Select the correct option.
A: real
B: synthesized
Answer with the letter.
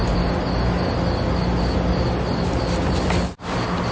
A